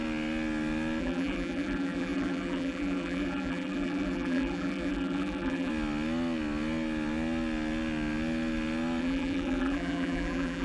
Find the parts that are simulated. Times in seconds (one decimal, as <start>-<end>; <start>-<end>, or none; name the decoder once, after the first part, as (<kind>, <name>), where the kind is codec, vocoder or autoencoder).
1.0-5.7 (vocoder, BigVGAN v2); 9.0-10.6